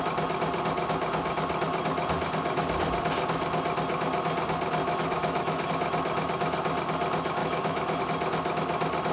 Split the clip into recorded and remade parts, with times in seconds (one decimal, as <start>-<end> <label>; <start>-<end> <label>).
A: 0.0-4.8 recorded; 4.8-5.7 remade; 5.7-7.4 recorded; 7.4-8.0 remade; 8.0-9.1 recorded